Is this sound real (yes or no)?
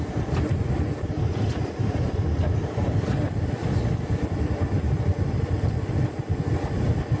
yes